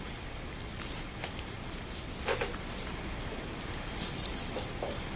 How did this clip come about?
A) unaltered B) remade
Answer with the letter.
A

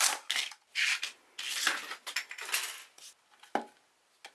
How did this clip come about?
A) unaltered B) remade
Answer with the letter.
A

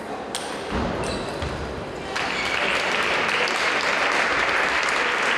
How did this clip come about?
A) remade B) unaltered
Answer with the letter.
B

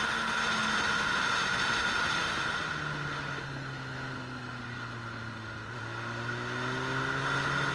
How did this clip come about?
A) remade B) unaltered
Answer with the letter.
B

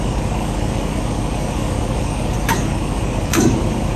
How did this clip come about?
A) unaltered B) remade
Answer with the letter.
B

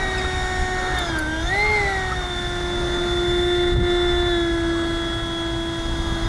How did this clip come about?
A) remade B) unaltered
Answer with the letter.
B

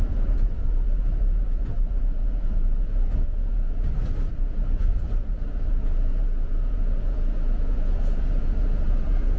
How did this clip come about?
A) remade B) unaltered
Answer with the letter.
A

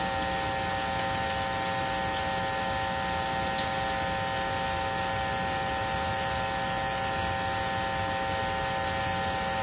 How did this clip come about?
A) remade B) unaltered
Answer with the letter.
B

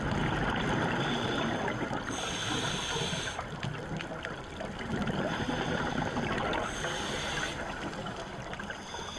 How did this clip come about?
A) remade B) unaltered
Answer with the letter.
B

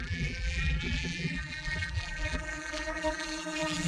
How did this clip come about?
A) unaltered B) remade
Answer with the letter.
B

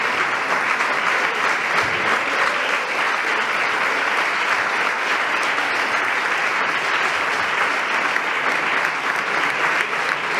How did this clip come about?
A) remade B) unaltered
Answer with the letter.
B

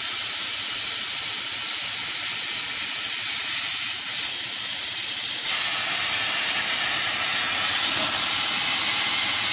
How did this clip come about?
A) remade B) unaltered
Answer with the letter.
B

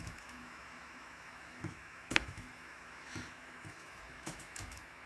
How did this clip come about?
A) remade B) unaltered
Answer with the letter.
A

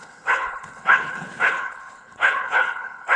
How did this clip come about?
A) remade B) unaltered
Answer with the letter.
A